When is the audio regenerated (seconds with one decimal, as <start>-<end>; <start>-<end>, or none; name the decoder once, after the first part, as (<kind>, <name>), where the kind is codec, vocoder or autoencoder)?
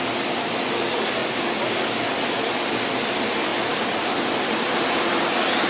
none